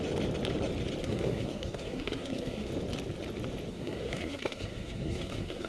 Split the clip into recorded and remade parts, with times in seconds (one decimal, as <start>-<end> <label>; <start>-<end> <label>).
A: 0.0-1.0 recorded; 1.0-2.7 remade; 2.7-3.7 recorded; 3.7-5.7 remade